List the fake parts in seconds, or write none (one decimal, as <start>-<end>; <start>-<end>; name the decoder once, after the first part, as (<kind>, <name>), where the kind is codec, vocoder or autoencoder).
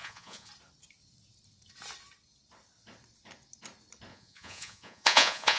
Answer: 0.0-0.5 (vocoder, Vocos); 4.1-5.6